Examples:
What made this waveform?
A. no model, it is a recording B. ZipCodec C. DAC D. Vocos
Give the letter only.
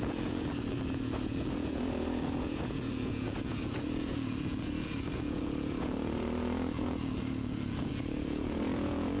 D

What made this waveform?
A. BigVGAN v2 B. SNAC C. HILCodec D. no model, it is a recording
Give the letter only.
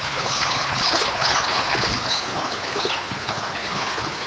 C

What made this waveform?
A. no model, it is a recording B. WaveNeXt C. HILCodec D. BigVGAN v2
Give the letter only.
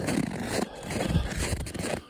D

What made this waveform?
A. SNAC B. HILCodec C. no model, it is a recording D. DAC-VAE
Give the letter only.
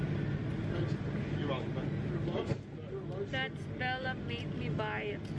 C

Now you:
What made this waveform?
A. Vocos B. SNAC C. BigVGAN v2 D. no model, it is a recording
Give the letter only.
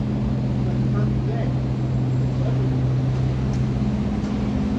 D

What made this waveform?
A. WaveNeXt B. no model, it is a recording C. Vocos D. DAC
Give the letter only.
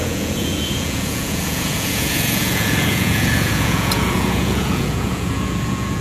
C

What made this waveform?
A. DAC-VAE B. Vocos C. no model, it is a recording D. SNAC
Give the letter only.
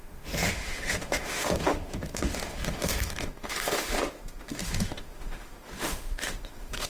A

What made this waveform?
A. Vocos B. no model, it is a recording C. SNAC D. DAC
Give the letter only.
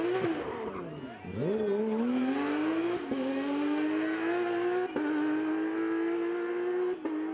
B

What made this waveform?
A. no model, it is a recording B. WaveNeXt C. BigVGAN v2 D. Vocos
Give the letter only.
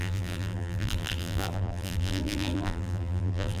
C